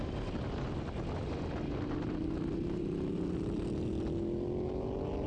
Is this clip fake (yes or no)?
no